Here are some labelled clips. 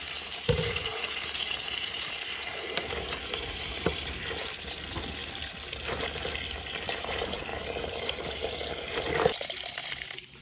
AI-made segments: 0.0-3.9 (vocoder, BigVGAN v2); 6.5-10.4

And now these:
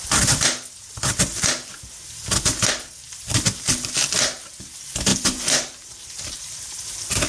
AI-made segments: 5.1-6.8 (vocoder, BigVGAN v2)

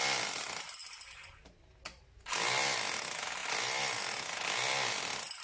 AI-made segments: none

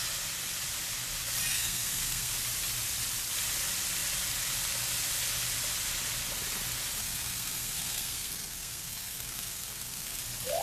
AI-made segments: 1.5-2.3 (codec, SNAC); 7.0-10.2